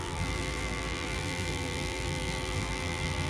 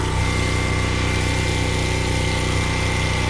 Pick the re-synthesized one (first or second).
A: first